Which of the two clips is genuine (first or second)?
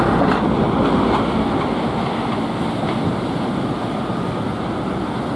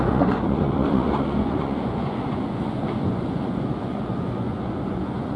first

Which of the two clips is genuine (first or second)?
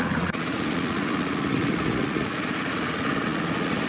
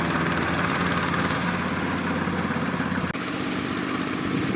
second